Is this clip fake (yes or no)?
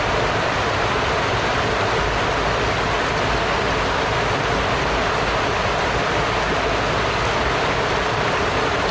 no